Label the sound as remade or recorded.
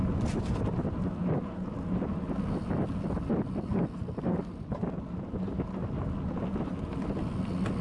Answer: recorded